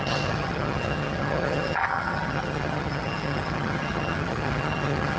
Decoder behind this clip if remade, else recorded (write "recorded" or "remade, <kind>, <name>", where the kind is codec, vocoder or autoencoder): remade, vocoder, HiFi-GAN